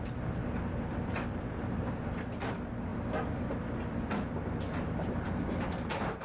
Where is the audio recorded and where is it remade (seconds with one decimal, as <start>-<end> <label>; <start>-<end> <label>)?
0.0-0.4 remade; 0.4-1.3 recorded; 1.3-2.9 remade; 2.9-5.7 recorded; 5.7-6.2 remade